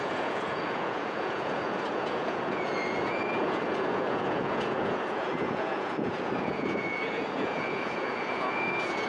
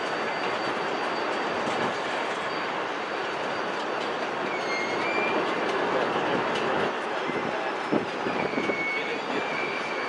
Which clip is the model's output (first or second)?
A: first